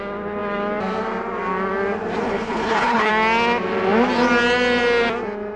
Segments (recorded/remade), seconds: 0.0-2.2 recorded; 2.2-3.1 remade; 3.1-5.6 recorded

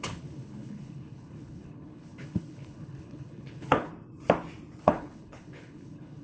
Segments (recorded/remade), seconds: 0.0-3.9 remade; 3.9-4.8 recorded; 4.8-6.2 remade

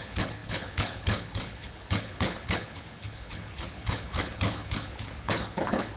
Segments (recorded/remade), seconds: 0.0-6.0 remade

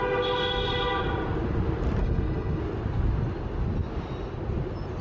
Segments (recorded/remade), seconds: 0.0-2.0 recorded; 2.0-2.6 remade; 2.6-5.0 recorded

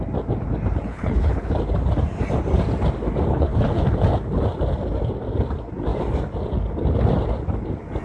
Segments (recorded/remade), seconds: 0.0-0.9 recorded; 0.9-1.5 remade; 1.5-3.3 recorded; 3.3-3.8 remade; 3.8-8.0 recorded

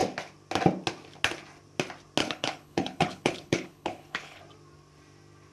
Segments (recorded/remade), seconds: 0.0-2.2 recorded; 2.2-4.4 remade; 4.4-5.5 recorded

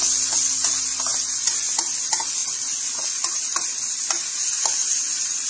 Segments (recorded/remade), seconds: 0.0-5.5 recorded